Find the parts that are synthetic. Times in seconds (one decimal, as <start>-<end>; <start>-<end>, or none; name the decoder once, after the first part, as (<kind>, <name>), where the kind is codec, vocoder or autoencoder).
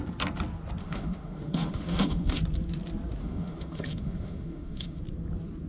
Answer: 0.8-2.4 (autoencoder, DAC-VAE); 3.2-5.0